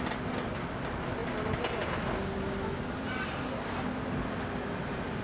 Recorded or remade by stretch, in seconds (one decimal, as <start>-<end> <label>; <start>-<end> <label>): 0.0-5.2 recorded